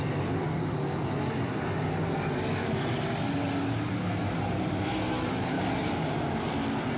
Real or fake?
real